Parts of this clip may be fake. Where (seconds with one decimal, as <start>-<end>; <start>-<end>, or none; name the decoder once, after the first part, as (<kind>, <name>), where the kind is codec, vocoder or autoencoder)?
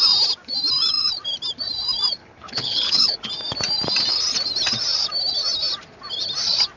2.2-3.3 (codec, HILCodec)